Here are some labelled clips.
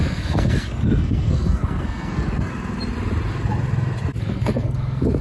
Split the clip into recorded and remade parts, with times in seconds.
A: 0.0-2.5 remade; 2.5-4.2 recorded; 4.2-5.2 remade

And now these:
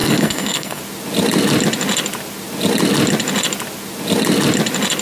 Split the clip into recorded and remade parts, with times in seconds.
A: 0.0-0.8 remade; 0.8-5.0 recorded

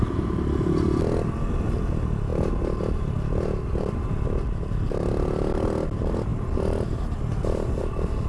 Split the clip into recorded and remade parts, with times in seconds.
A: 0.0-8.3 recorded

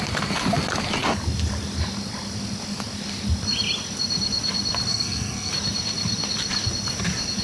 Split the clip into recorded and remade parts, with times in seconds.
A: 0.0-4.9 recorded; 4.9-5.5 remade; 5.5-7.4 recorded

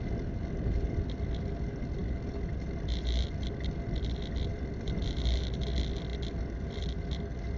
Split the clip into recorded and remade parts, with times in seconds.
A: 0.0-7.6 recorded

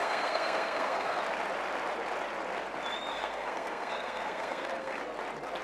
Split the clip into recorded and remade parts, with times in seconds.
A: 0.0-1.2 remade; 1.2-3.1 recorded; 3.1-5.0 remade; 5.0-5.6 recorded